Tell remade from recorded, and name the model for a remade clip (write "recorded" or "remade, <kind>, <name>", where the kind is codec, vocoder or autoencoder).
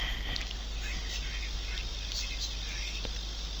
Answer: recorded